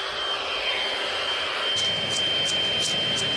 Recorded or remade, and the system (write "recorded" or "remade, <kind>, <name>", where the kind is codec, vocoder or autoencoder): recorded